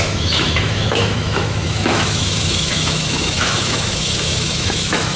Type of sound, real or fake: fake